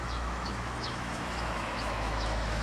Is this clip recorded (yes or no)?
no